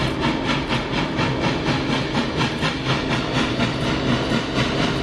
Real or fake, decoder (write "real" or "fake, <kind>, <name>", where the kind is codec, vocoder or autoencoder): real